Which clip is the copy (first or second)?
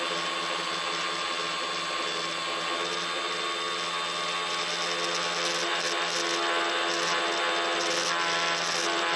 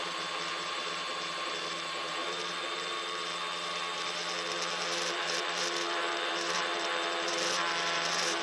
second